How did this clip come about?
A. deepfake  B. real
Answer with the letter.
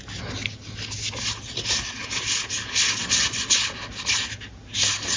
B